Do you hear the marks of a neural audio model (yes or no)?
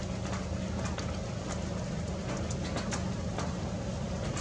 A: no